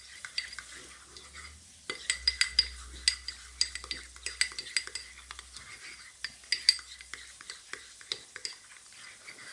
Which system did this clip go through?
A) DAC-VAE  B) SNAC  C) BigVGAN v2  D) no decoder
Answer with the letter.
D